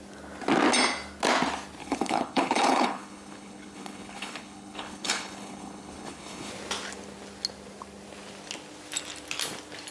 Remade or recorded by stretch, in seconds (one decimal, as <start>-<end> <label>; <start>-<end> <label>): 0.0-1.8 recorded; 1.8-6.5 remade; 6.5-9.9 recorded